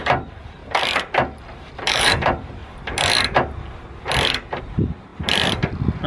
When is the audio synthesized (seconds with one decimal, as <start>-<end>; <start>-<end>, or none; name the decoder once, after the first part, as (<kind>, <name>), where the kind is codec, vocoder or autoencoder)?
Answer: 0.0-0.6 (vocoder, BigVGAN v2); 1.8-2.6; 4.6-5.1